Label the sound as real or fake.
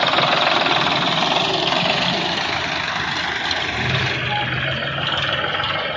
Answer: real